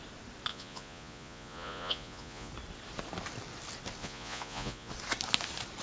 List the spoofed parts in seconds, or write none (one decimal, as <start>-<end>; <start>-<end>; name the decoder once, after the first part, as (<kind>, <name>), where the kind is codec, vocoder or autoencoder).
0.5-2.5 (vocoder, Vocos); 4.0-4.9